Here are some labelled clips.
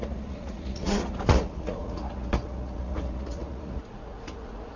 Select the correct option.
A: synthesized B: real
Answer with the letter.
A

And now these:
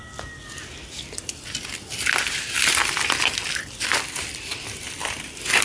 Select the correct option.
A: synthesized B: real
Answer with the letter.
B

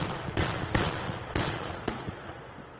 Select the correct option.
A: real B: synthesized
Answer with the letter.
B